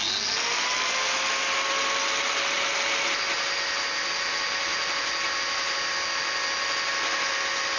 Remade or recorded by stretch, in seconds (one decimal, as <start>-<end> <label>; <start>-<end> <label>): 0.0-7.8 recorded